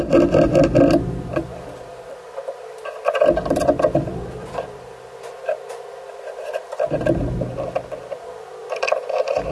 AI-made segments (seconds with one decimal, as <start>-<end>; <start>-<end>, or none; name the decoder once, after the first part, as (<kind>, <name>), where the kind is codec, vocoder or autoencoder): 1.3-6.6 (vocoder, BigVGAN v2); 8.6-9.5